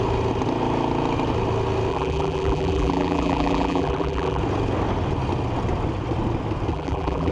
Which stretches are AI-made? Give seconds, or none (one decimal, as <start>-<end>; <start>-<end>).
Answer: 1.9-4.4; 6.7-7.3